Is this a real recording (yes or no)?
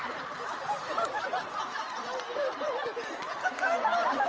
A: yes